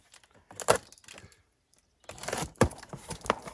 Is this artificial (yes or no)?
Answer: no